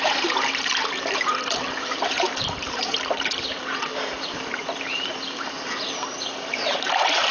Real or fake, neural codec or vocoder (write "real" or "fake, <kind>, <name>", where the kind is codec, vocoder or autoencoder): fake, vocoder, BigVGAN v2